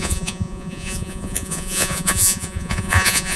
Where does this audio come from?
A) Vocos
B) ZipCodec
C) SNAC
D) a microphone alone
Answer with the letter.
A